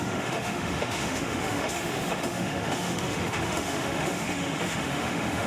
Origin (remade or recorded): remade